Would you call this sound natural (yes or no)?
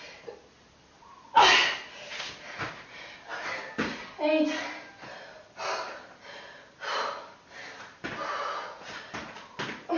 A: yes